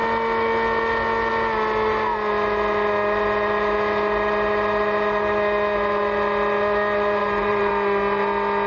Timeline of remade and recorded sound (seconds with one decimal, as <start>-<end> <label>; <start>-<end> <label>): 0.0-7.2 recorded; 7.2-7.7 remade; 7.7-8.7 recorded